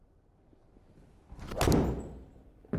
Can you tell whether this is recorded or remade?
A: recorded